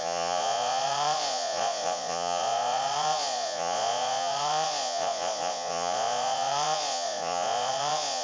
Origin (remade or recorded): remade